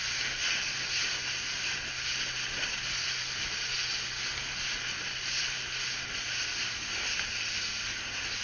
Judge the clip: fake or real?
real